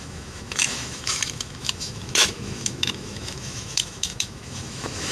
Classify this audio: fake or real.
fake